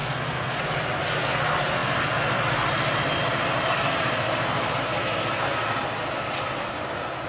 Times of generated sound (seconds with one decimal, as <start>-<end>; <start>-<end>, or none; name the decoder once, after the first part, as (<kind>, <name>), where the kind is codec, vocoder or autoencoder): 0.0-0.6 (codec, SNAC)